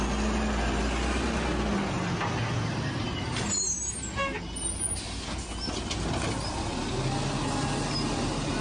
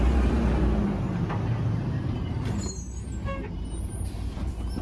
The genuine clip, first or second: first